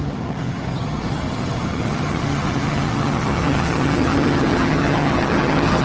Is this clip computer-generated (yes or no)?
yes